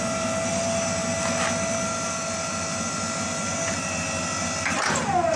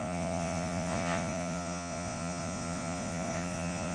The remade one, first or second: second